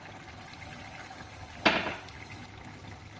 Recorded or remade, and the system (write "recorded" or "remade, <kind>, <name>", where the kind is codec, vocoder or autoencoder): recorded